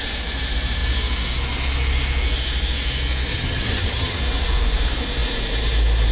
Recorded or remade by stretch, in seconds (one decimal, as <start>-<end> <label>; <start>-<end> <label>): 0.0-3.3 recorded; 3.3-4.2 remade; 4.2-6.1 recorded